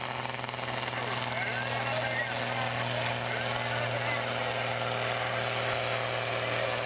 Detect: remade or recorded recorded